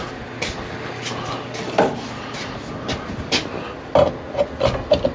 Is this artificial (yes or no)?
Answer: no